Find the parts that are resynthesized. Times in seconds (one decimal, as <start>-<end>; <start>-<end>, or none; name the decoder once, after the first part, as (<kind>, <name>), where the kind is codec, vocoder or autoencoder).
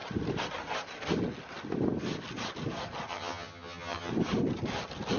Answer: 3.1-4.1 (vocoder, HiFi-GAN)